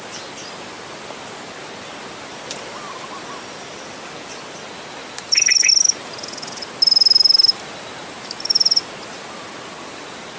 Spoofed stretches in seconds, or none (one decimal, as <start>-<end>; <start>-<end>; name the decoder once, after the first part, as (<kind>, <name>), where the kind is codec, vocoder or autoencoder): 2.3-2.9 (vocoder, BigVGAN v2); 5.0-5.7